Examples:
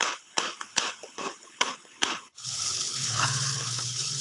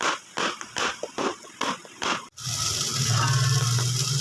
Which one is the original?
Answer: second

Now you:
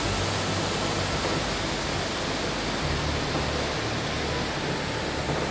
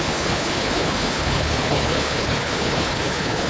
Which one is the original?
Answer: first